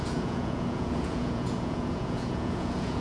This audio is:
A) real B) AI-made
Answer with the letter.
B